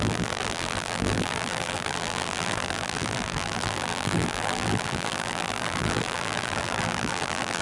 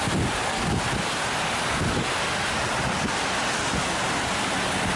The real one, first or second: second